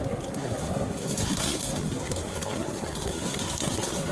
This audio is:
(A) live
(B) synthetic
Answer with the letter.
B